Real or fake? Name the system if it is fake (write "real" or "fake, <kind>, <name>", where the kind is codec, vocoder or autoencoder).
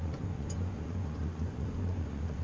fake, vocoder, Vocos